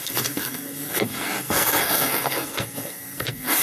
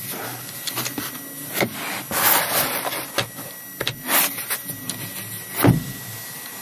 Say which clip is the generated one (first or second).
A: first